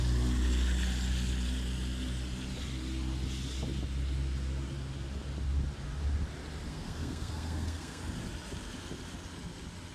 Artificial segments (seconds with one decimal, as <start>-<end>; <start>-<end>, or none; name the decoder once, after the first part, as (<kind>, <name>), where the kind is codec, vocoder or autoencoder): 6.7-8.0 (codec, SNAC)